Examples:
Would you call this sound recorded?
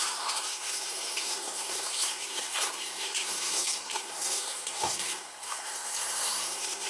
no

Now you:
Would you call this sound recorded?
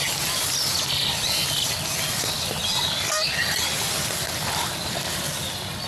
yes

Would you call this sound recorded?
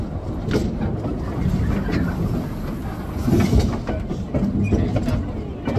yes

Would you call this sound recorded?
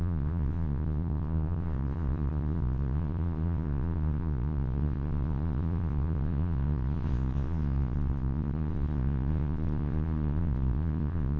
no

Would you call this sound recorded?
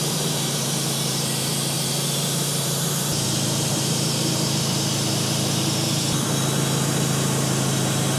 no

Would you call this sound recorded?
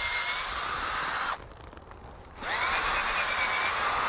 yes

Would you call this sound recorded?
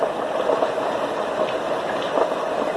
no